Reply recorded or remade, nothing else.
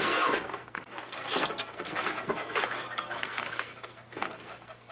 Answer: remade